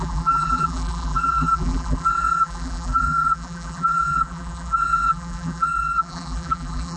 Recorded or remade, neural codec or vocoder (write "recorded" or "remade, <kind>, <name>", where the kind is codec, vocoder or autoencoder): remade, vocoder, BigVGAN v2